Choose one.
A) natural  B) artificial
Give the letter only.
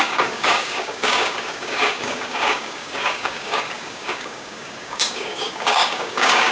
B